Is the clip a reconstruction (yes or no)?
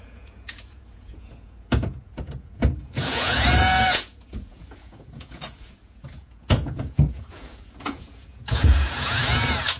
yes